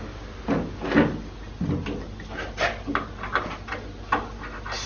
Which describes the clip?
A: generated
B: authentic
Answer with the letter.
B